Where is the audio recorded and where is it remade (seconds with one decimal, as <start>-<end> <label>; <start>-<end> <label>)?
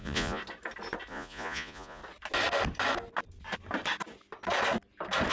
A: 0.0-0.4 remade; 0.4-1.1 recorded; 1.1-2.0 remade; 2.0-5.3 recorded